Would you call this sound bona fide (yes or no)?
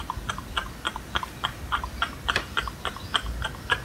yes